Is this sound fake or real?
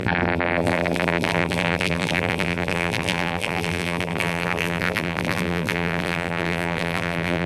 fake